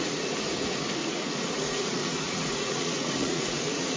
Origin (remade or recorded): remade